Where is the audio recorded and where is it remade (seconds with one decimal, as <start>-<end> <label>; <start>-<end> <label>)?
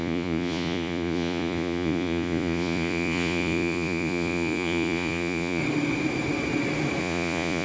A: 0.0-5.6 remade; 5.6-7.0 recorded; 7.0-7.6 remade